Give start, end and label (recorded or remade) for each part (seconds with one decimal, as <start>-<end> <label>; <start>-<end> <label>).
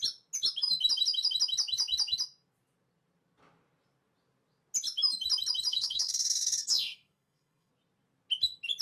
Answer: 0.0-5.7 recorded; 5.7-7.7 remade; 7.7-8.8 recorded